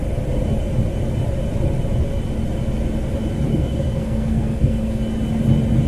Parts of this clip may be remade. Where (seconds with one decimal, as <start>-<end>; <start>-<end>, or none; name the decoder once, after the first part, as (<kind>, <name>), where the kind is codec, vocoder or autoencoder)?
3.5-5.0 (codec, SNAC)